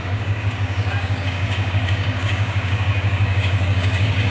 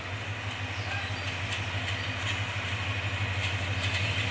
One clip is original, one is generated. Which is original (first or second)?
second